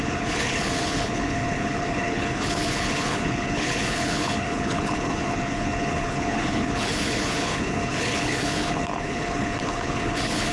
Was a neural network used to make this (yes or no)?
yes